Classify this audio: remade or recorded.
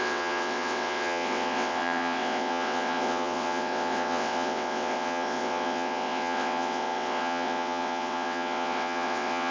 remade